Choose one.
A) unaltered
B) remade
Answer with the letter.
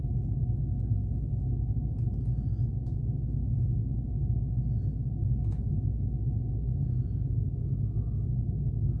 A